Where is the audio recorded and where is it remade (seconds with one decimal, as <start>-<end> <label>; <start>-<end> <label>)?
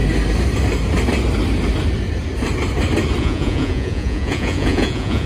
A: 0.0-3.2 recorded; 3.2-5.3 remade